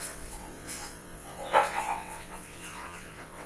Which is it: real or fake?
fake